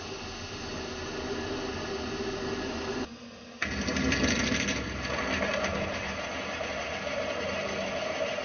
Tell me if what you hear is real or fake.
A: real